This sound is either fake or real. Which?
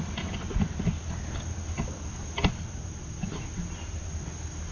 real